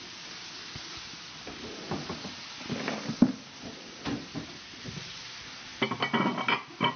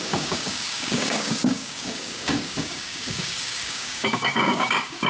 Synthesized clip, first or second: second